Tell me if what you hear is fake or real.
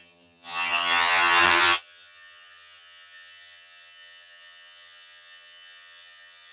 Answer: fake